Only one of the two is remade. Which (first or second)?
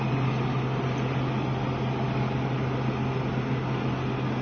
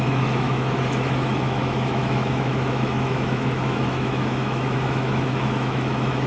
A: second